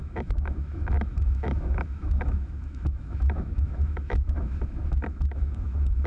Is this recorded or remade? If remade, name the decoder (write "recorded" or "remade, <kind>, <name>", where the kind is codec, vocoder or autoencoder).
remade, autoencoder, DAC-VAE